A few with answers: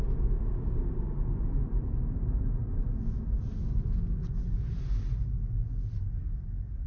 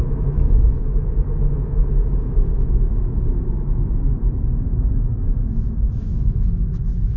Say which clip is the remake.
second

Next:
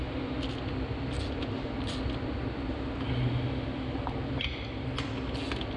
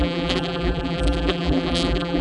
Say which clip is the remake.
second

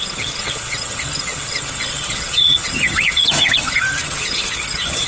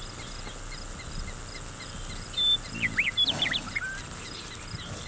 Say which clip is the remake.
first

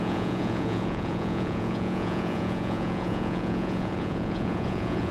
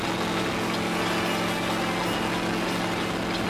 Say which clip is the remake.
first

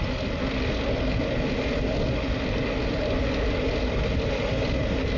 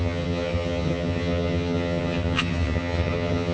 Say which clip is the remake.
second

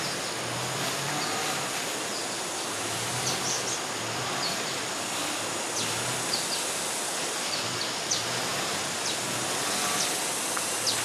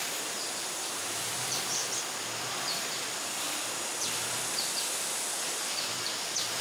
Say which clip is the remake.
second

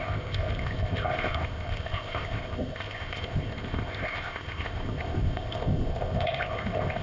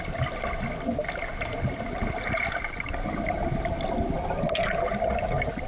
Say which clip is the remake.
first